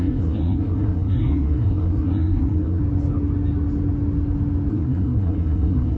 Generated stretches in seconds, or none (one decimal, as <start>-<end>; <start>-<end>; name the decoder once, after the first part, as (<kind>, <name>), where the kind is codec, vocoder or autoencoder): 0.0-2.8 (codec, SNAC); 4.7-6.0